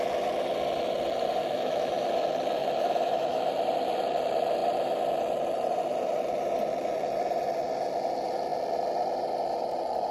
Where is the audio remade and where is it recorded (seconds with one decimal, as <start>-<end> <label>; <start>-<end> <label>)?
0.0-1.4 recorded; 1.4-2.1 remade; 2.1-2.6 recorded; 2.6-3.5 remade; 3.5-10.1 recorded